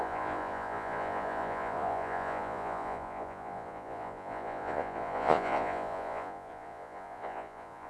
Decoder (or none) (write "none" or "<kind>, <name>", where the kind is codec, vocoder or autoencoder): vocoder, Vocos